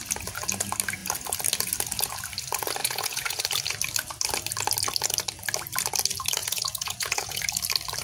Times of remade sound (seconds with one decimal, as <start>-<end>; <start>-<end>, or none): 2.8-3.4; 6.4-7.4